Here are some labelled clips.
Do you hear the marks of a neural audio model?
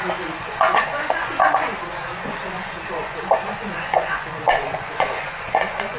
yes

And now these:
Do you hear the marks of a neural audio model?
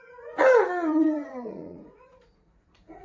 yes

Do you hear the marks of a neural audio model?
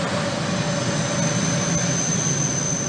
no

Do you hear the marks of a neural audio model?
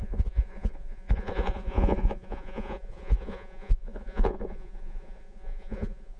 yes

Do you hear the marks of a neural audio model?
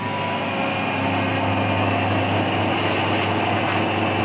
no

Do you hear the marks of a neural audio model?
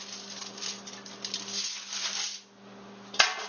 no